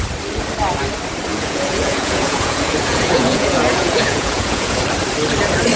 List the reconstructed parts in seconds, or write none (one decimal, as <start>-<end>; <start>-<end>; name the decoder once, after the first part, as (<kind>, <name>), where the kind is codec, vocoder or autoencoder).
1.3-4.8 (vocoder, Vocos)